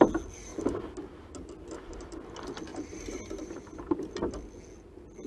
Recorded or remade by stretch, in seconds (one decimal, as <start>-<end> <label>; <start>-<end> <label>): 0.0-2.7 recorded; 2.7-4.1 remade; 4.1-5.3 recorded